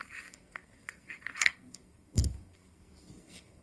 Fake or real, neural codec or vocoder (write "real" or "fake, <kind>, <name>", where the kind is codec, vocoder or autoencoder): fake, codec, SNAC